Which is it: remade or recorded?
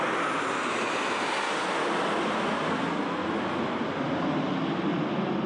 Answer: recorded